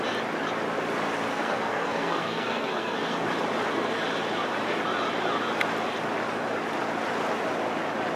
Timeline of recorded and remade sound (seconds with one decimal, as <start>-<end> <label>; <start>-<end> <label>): 0.0-1.3 recorded; 1.3-3.3 remade; 3.3-8.2 recorded